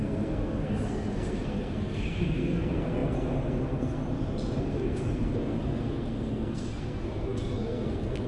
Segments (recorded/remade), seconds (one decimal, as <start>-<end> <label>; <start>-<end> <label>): 0.0-4.0 remade; 4.0-4.6 recorded; 4.6-8.3 remade